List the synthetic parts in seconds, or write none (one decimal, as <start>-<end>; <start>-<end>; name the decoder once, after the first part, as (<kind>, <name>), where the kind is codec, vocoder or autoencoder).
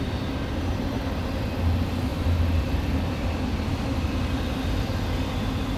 2.1-3.2 (vocoder, BigVGAN v2); 3.7-4.4